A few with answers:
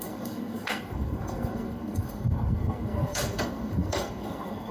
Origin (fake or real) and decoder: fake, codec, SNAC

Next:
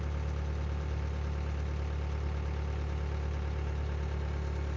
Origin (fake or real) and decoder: real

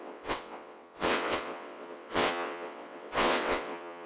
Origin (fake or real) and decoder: fake, vocoder, WaveNeXt